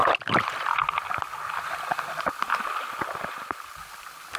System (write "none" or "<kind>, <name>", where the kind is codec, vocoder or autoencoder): none